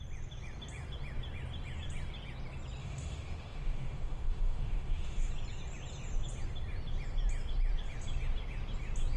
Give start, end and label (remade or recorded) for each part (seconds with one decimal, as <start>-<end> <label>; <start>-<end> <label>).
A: 0.0-2.8 recorded; 2.8-5.3 remade; 5.3-9.2 recorded